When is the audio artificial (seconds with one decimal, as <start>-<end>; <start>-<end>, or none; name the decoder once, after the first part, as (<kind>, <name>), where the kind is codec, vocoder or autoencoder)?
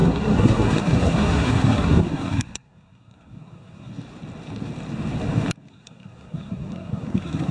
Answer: 0.0-3.9 (codec, SNAC); 5.7-7.5